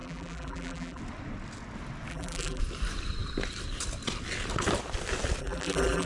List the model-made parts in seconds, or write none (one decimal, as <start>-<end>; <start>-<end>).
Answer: 0.0-1.0; 2.1-2.6; 5.4-6.1